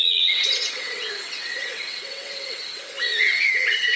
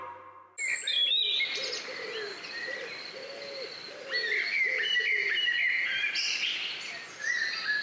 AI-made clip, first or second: first